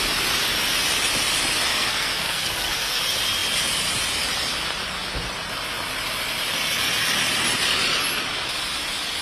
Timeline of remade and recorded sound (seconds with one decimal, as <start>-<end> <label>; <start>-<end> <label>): 0.0-1.7 recorded; 1.7-3.0 remade; 3.0-9.2 recorded